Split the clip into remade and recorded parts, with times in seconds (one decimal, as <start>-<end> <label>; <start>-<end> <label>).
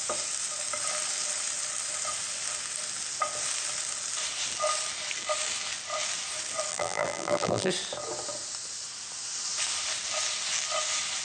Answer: 0.0-6.7 recorded; 6.7-7.7 remade; 7.7-11.2 recorded